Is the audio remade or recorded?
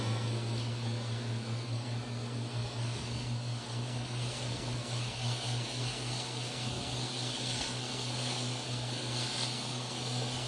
remade